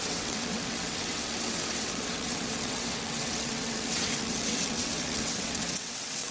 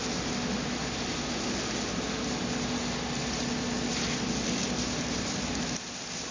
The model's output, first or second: first